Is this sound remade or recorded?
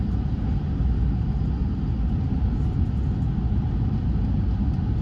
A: recorded